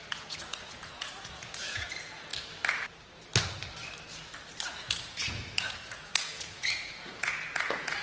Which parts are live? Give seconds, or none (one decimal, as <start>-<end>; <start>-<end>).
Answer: 2.3-4.8